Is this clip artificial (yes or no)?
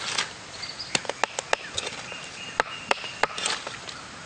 no